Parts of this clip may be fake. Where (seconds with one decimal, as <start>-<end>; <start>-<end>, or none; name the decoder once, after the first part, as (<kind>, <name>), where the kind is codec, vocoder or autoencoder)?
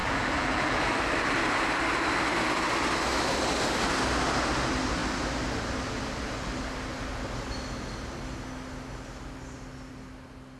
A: 0.0-0.7 (vocoder, BigVGAN v2)